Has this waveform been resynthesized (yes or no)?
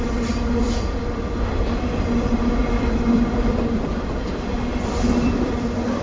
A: yes